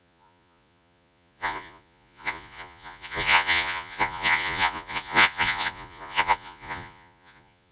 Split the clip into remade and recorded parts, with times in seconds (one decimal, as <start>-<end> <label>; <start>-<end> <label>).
0.0-7.7 remade